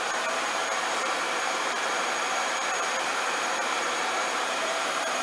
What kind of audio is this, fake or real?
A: fake